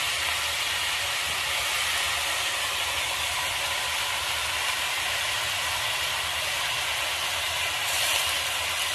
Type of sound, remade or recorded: recorded